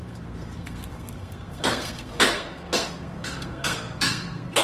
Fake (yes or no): yes